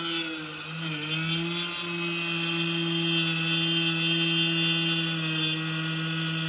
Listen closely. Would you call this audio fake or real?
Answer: real